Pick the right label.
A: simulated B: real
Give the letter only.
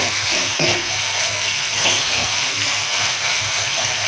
A